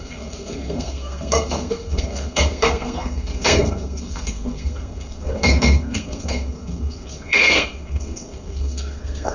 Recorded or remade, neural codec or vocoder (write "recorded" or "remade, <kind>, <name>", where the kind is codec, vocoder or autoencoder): remade, codec, SNAC